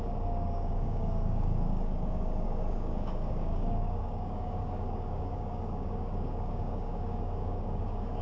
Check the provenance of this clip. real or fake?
fake